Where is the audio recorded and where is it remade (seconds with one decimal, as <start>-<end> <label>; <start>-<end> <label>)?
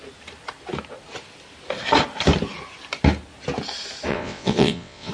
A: 0.0-4.1 recorded; 4.1-5.1 remade